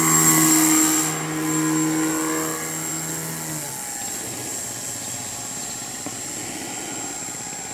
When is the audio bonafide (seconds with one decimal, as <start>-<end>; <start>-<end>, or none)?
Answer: 0.0-7.7